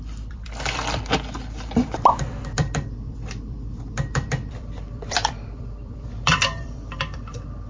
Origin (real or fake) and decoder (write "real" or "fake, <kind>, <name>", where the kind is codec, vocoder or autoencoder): fake, vocoder, BigVGAN v2